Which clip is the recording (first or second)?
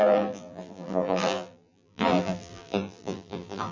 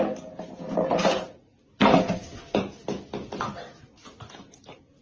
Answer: second